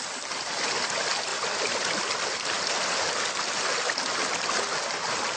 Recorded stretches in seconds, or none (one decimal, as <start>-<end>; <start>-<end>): 0.0-5.4